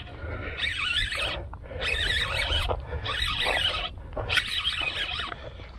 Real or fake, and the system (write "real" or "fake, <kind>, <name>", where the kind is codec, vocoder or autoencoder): real